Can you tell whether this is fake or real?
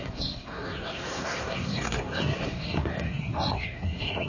fake